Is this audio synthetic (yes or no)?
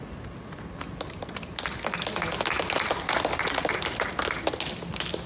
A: no